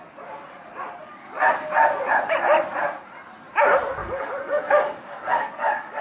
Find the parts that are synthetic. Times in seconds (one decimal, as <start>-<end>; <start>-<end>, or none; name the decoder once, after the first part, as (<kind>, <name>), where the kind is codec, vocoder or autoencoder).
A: 4.0-6.0 (codec, DAC)